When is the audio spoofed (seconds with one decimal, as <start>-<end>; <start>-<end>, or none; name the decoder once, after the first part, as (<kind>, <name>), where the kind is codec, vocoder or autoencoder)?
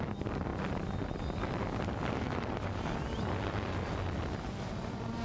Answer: none